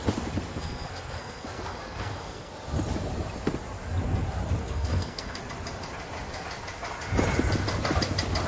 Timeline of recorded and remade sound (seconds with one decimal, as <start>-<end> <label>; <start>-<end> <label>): 0.0-0.5 recorded; 0.5-2.5 remade; 2.5-4.6 recorded; 4.6-5.4 remade; 5.4-8.5 recorded